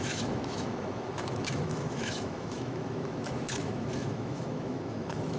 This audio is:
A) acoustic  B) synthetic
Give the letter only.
B